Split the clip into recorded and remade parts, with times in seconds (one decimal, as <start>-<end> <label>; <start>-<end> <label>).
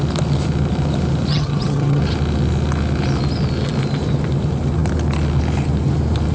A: 0.0-1.3 recorded; 1.3-2.0 remade; 2.0-6.3 recorded